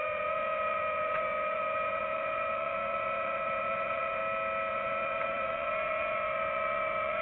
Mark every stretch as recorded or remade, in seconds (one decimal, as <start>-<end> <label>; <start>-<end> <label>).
0.0-4.2 remade; 4.2-4.7 recorded; 4.7-7.2 remade